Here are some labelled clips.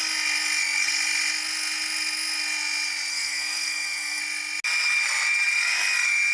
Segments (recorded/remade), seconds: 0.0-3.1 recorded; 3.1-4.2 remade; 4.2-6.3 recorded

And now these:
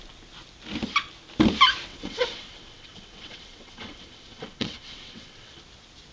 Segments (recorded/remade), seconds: 0.0-1.9 recorded; 1.9-5.6 remade; 5.6-6.1 recorded

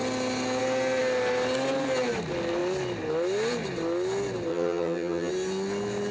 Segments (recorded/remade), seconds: 0.0-4.5 recorded; 4.5-5.3 remade; 5.3-6.1 recorded

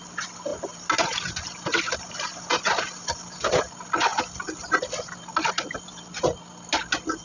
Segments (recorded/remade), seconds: 0.0-7.2 recorded

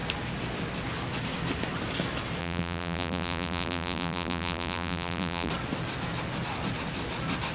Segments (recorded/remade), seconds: 0.0-2.4 recorded; 2.4-5.5 remade; 5.5-7.5 recorded

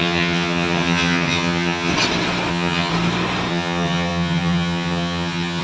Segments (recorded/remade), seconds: 0.0-1.9 remade; 1.9-2.5 recorded; 2.5-2.9 remade; 2.9-3.5 recorded; 3.5-5.6 remade